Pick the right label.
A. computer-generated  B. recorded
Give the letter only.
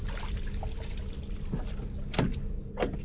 B